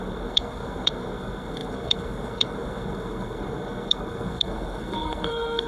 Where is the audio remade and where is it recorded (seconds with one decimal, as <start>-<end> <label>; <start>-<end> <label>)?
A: 0.0-5.7 remade